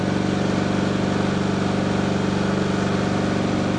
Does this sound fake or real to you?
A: real